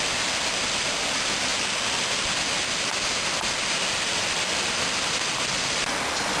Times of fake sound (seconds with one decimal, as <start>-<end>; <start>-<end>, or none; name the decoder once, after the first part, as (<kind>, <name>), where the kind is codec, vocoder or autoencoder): none